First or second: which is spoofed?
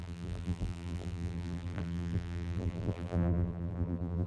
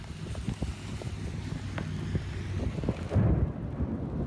first